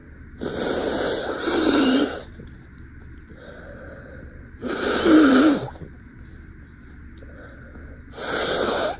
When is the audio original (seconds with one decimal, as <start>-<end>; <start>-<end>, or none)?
0.0-9.0